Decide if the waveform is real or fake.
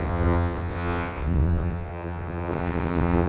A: fake